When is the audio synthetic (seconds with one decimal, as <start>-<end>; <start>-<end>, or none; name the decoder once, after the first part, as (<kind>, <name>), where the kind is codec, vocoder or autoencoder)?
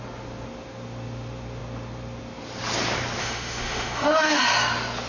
3.2-4.4 (autoencoder, DAC-VAE)